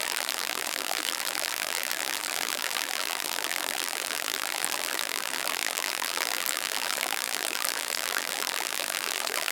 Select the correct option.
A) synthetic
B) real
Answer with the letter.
A